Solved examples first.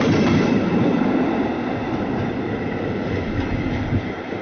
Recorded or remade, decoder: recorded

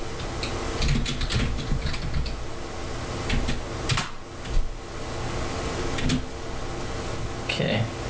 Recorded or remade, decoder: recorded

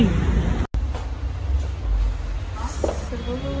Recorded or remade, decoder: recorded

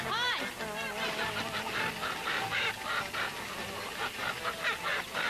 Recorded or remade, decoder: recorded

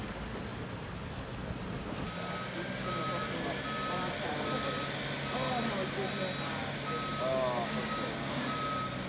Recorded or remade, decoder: recorded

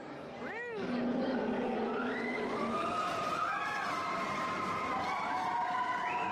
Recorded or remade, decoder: recorded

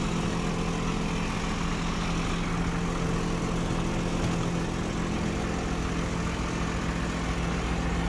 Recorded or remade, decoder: recorded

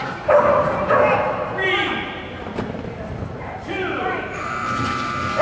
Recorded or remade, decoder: remade, vocoder, BigVGAN v2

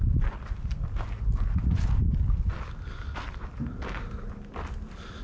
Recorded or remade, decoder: recorded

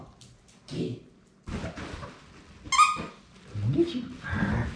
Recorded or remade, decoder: recorded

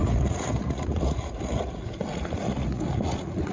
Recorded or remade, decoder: remade, vocoder, Vocos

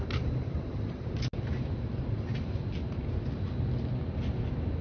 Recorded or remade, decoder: recorded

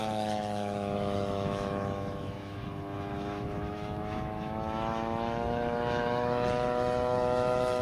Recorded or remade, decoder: remade, autoencoder, DAC-VAE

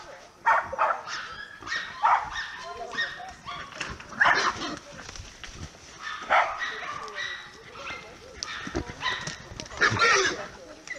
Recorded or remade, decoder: recorded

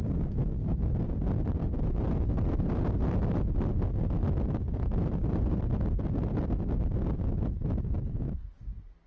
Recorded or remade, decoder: recorded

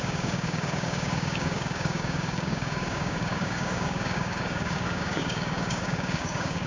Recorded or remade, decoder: remade, codec, DAC